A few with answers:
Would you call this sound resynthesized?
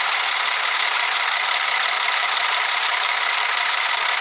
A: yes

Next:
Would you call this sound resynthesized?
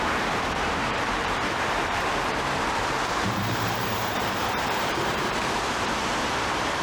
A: yes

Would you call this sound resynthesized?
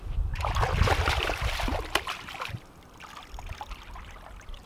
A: yes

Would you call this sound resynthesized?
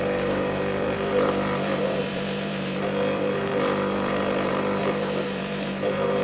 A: yes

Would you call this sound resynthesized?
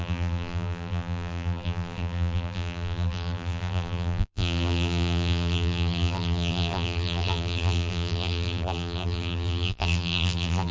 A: yes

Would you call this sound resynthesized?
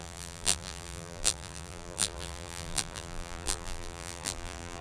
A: yes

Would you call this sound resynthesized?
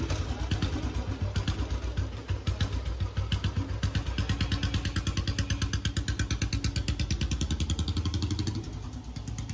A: no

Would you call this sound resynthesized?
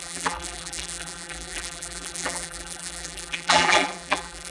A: yes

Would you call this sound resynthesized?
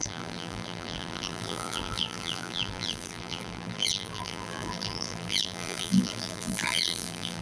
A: yes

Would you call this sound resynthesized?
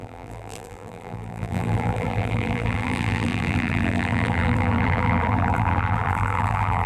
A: yes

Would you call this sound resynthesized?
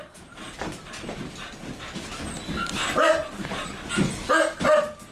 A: no